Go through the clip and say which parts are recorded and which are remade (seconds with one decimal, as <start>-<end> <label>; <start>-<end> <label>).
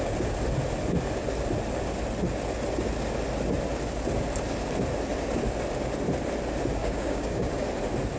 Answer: 0.0-6.8 recorded; 6.8-7.5 remade; 7.5-8.2 recorded